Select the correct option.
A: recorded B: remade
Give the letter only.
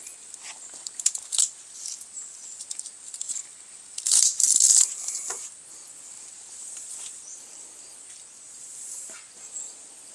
A